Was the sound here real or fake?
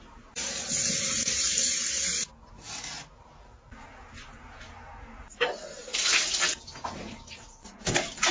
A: real